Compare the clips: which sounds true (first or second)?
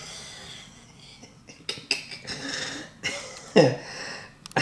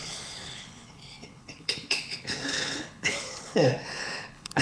first